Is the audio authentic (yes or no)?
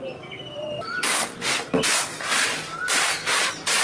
yes